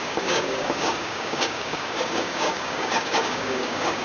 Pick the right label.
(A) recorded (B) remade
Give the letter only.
B